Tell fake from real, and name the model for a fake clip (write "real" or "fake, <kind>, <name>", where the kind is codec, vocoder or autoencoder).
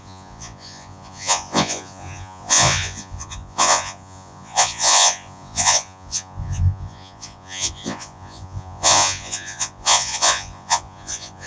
fake, vocoder, Vocos